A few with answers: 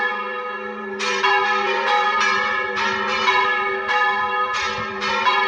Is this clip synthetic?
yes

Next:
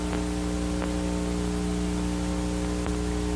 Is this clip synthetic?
no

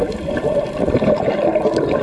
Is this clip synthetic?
yes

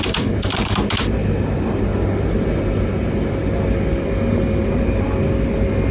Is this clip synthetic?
no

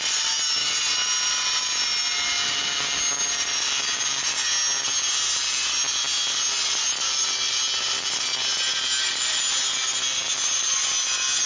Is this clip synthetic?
no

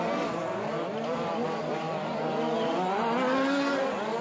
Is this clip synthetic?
no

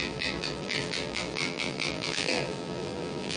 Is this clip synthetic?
yes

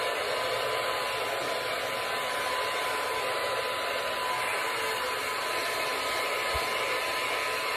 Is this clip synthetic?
no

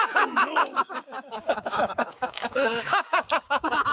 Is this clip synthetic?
yes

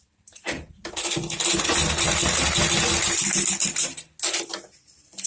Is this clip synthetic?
no